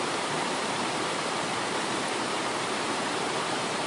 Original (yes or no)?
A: no